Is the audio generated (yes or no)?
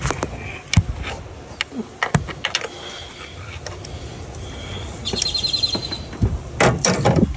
no